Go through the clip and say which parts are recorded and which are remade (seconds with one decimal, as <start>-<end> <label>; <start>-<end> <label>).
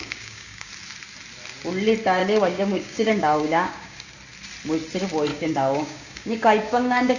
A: 0.0-0.7 remade; 0.7-2.2 recorded; 2.2-4.1 remade; 4.1-5.3 recorded; 5.3-7.2 remade